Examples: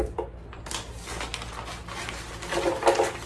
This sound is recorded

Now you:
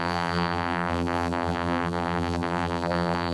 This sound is remade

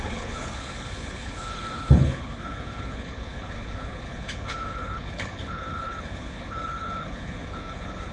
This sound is remade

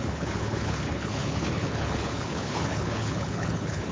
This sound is remade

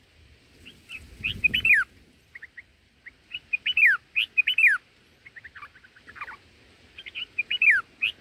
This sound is recorded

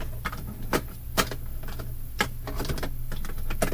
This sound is recorded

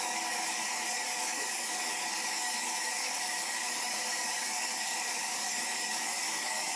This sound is remade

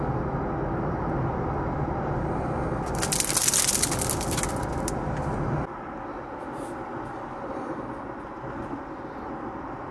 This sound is recorded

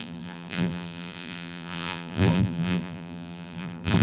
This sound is remade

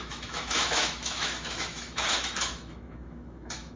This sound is remade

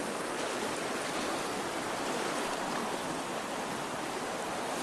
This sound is recorded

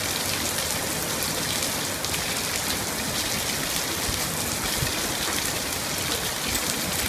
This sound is recorded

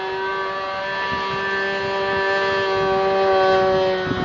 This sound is recorded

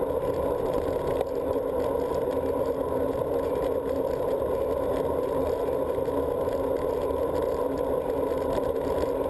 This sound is recorded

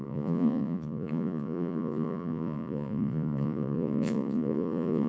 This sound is remade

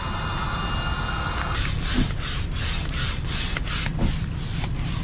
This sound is recorded